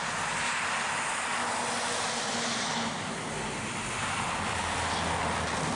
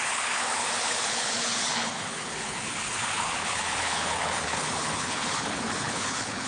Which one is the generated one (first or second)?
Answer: second